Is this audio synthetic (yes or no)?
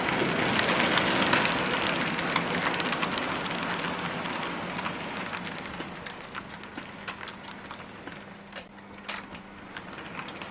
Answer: no